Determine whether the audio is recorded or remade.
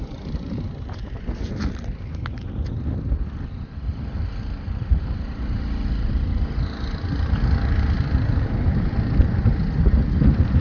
recorded